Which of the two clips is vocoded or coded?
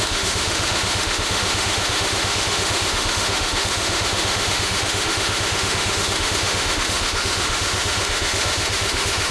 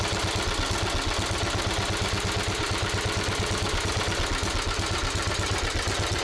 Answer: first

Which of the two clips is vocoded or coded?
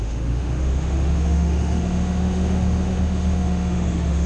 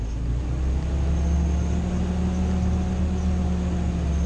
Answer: first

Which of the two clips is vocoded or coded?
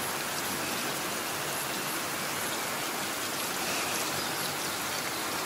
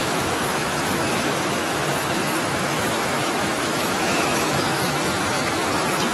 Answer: second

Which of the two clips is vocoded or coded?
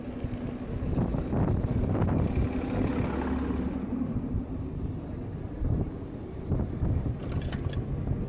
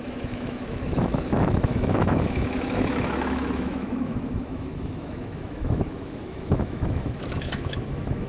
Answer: second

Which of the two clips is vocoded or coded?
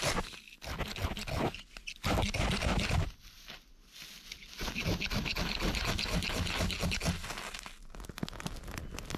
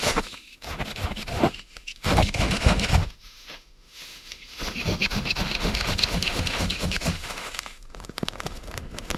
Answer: second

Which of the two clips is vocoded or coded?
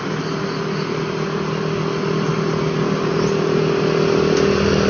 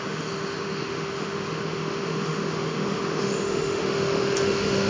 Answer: second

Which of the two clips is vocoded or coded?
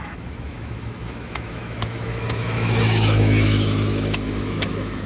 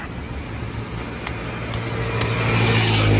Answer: first